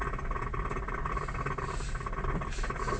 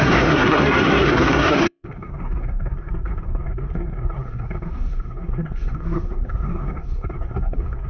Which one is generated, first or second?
second